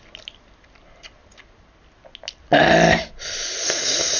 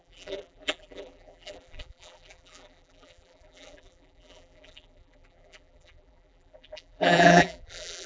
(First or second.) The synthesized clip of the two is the second